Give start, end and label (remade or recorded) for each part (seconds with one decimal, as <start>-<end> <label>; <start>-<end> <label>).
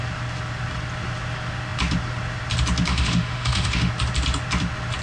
0.0-2.9 recorded; 2.9-3.9 remade; 3.9-5.0 recorded